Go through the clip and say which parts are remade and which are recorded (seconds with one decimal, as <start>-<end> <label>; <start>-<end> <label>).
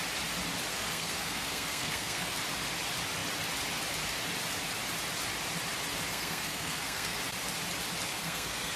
0.0-0.7 recorded; 0.7-2.4 remade; 2.4-6.1 recorded; 6.1-7.2 remade; 7.2-8.1 recorded; 8.1-8.8 remade